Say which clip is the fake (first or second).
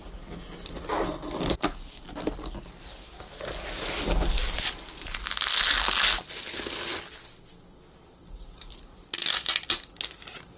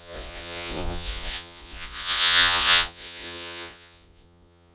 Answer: second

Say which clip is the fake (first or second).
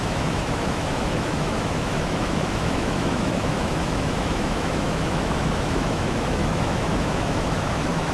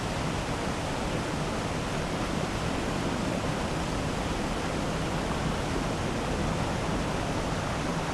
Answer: first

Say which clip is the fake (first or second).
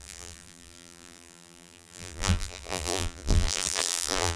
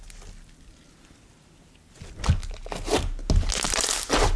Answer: first